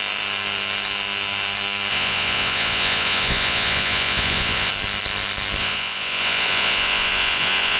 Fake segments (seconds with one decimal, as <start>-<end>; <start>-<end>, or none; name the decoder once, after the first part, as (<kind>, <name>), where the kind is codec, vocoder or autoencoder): 1.9-4.7 (vocoder, Vocos); 5.6-7.8